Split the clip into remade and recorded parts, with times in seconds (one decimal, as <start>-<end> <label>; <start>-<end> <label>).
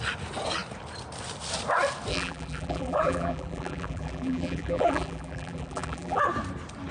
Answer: 0.0-2.1 recorded; 2.1-6.2 remade; 6.2-6.9 recorded